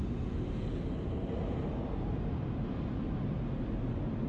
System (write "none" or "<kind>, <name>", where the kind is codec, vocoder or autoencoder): none